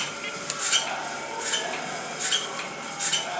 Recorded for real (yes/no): yes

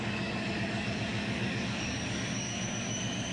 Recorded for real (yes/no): no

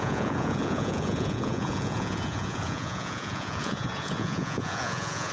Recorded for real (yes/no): no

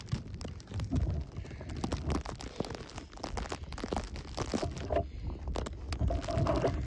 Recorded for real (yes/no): yes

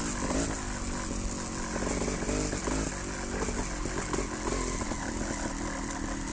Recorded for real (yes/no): yes